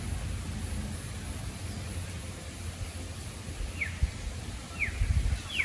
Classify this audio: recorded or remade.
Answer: recorded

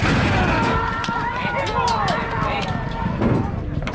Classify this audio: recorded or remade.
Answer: recorded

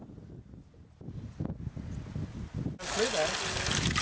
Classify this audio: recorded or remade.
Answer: recorded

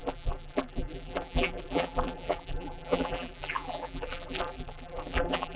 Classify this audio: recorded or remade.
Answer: remade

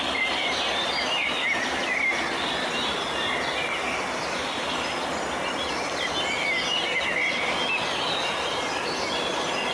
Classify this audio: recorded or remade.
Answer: recorded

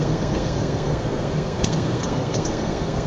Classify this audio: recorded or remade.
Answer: remade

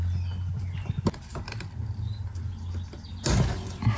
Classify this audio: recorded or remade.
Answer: recorded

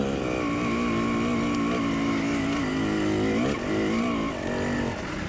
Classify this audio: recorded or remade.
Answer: recorded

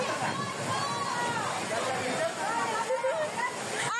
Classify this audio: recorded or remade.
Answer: recorded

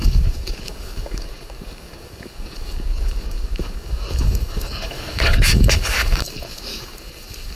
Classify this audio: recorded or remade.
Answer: remade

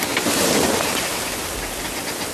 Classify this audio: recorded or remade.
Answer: recorded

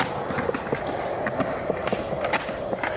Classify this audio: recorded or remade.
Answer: recorded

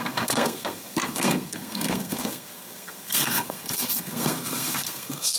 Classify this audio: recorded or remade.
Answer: remade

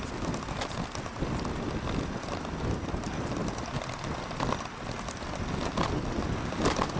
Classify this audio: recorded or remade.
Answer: recorded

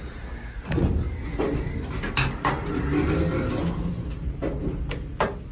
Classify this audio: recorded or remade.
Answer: recorded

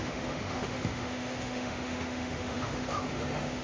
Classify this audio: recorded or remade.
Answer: remade